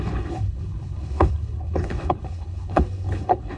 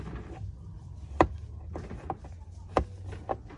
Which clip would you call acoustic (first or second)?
second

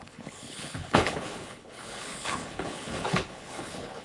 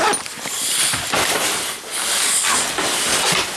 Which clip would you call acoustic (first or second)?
second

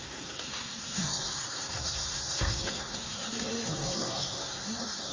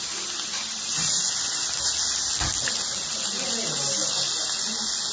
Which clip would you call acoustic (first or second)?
second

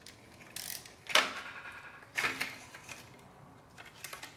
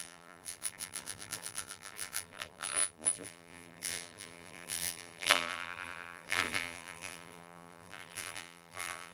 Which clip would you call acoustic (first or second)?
first